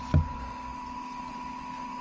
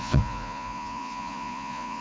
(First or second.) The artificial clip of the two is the second